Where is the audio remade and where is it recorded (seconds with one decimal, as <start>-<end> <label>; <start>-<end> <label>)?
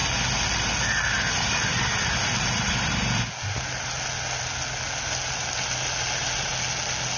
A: 0.0-7.2 recorded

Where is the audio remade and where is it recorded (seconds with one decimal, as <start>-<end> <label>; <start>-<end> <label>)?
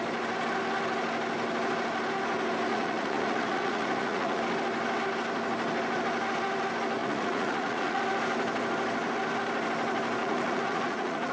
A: 0.0-2.7 recorded; 2.7-4.4 remade; 4.4-7.0 recorded; 7.0-8.0 remade; 8.0-10.2 recorded; 10.2-11.3 remade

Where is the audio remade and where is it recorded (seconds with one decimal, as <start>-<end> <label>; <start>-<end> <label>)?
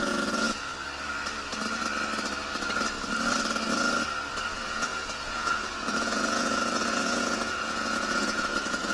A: 0.0-0.7 remade; 0.7-4.5 recorded; 4.5-8.9 remade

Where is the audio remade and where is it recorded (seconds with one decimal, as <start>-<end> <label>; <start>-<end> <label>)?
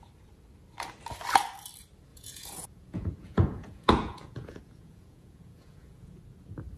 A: 0.0-2.1 recorded; 2.1-6.2 remade; 6.2-6.8 recorded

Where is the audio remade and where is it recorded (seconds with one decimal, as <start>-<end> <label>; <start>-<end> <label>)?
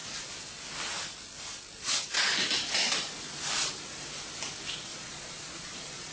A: 0.0-4.9 recorded; 4.9-6.1 remade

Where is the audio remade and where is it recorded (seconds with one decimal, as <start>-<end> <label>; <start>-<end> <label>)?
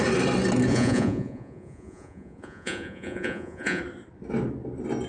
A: 0.0-0.7 recorded; 0.7-3.8 remade; 3.8-5.1 recorded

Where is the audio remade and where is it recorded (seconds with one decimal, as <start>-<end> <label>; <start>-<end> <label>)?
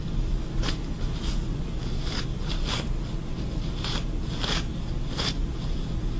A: 0.0-6.2 recorded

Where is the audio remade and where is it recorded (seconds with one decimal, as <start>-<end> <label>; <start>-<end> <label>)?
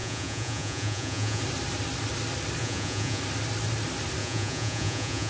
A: 0.0-1.4 remade; 1.4-2.6 recorded; 2.6-3.2 remade; 3.2-4.2 recorded; 4.2-5.3 remade